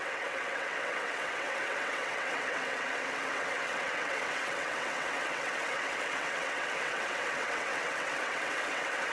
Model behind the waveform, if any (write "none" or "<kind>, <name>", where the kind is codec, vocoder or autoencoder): vocoder, WaveNeXt